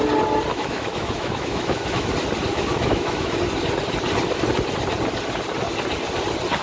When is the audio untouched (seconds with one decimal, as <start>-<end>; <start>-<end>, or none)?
0.0-0.5; 2.1-2.5; 3.4-6.6